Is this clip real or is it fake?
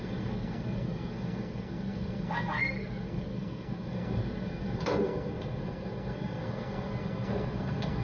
fake